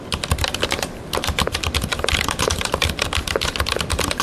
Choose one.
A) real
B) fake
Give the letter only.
A